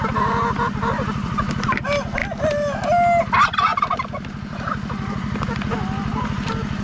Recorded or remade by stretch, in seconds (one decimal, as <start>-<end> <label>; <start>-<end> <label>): 0.0-2.2 remade; 2.2-3.2 recorded; 3.2-6.8 remade